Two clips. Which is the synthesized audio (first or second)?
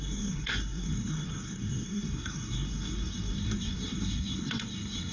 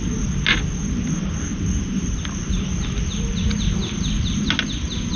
first